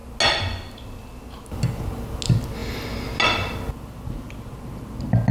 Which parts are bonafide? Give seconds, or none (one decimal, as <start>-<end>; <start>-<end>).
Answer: 0.0-5.3